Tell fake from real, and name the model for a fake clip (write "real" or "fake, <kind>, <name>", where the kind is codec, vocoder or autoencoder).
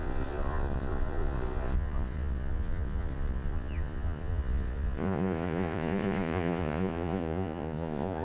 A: fake, vocoder, Vocos